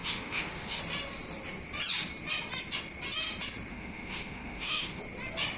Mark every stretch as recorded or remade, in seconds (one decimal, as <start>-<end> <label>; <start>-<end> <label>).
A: 0.0-0.8 remade; 0.8-3.7 recorded; 3.7-5.0 remade; 5.0-5.6 recorded